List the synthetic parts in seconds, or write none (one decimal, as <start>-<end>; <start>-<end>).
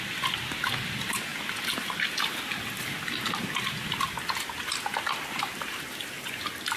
none